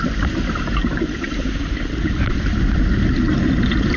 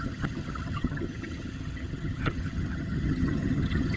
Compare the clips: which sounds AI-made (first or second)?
second